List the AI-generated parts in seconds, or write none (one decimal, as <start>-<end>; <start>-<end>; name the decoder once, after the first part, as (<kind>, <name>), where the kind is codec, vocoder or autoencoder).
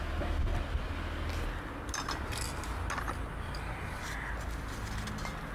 none